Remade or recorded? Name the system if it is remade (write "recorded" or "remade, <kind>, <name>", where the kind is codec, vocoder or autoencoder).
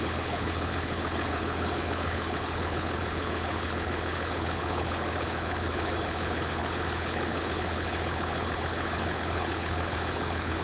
remade, codec, HILCodec